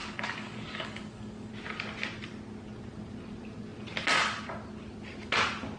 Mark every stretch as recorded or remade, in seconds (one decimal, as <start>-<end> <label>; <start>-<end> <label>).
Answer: 0.0-1.5 remade; 1.5-5.8 recorded